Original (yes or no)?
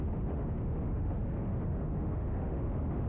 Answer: no